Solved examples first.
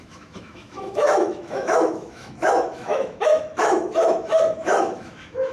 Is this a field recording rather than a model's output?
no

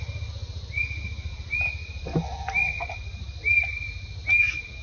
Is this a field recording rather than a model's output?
yes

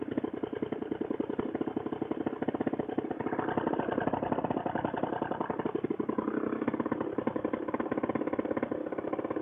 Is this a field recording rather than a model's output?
yes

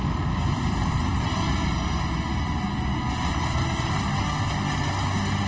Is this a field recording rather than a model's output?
yes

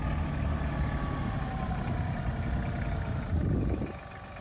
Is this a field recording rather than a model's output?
yes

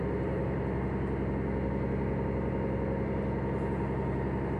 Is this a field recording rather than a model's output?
yes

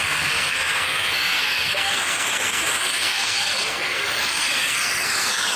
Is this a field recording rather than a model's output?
no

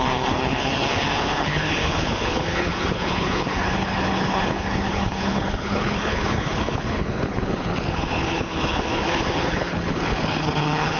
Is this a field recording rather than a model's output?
no